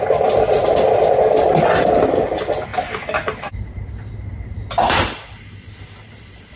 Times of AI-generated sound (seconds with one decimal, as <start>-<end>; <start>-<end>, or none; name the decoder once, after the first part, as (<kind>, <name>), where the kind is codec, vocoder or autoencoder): 0.0-2.7 (vocoder, BigVGAN v2); 3.4-6.6